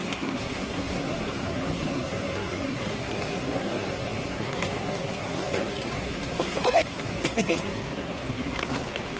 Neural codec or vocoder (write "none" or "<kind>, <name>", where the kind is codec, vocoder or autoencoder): codec, SNAC